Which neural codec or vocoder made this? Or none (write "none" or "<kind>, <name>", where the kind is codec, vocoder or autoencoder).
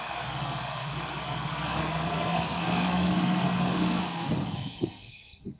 codec, SNAC